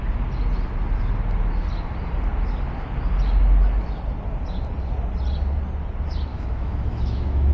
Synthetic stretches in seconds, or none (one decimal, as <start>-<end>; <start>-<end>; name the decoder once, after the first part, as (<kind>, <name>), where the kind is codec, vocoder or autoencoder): 6.3-7.5 (autoencoder, DAC-VAE)